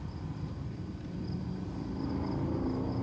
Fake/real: real